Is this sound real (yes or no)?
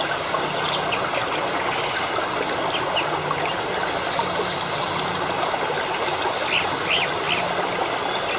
yes